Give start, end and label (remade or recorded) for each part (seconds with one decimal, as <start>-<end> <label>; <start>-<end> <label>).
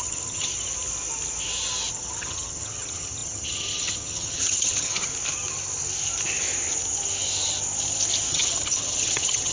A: 0.0-0.5 remade; 0.5-1.9 recorded; 1.9-5.1 remade; 5.1-8.3 recorded; 8.3-9.5 remade